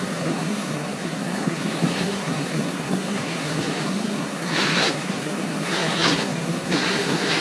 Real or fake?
fake